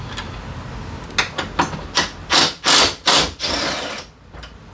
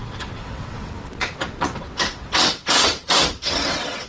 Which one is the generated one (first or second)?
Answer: second